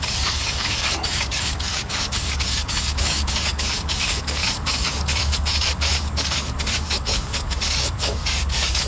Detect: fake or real fake